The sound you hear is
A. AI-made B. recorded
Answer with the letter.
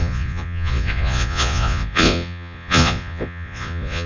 A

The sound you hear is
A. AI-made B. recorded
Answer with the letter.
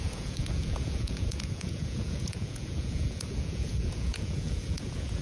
A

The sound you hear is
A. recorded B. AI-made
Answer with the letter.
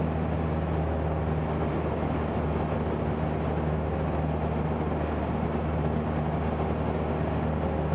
A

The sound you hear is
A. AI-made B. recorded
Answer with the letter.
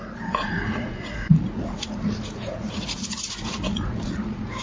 A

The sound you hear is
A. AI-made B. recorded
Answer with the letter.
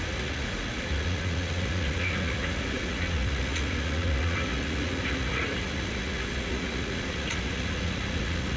A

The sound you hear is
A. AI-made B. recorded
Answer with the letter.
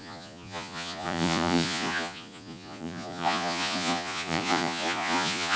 A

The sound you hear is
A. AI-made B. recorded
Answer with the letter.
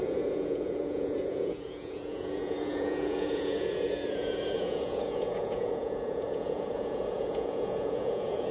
A